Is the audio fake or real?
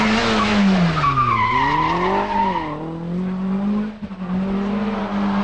real